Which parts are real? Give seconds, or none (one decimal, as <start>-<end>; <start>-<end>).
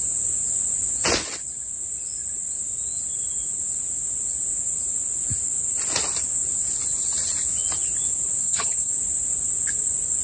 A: 0.0-8.4; 8.9-10.2